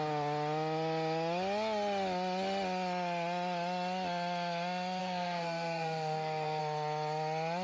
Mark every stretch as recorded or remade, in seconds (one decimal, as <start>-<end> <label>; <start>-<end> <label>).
0.0-5.0 recorded; 5.0-6.6 remade; 6.6-7.6 recorded